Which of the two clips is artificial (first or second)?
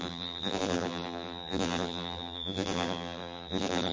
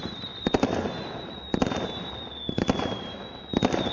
first